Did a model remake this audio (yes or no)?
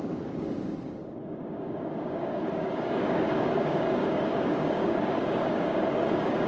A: yes